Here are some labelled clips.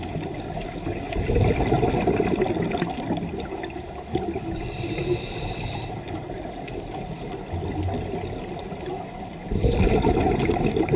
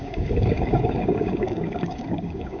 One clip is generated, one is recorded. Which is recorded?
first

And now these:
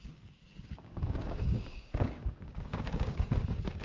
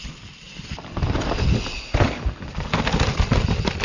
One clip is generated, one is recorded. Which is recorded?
second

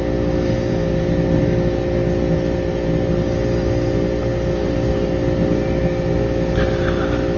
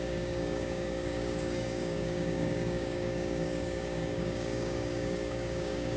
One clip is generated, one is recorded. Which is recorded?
first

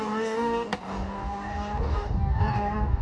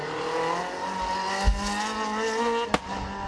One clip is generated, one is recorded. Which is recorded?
second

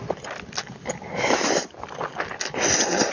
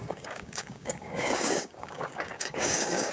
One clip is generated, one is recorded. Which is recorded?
first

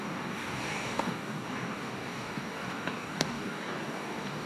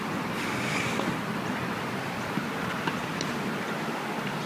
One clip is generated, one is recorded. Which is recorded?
second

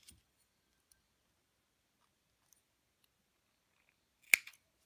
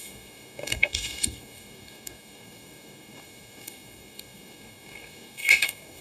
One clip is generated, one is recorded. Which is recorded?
first